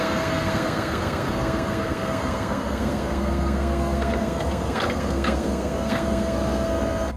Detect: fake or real fake